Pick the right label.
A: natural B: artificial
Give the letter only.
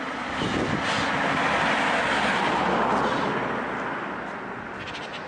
A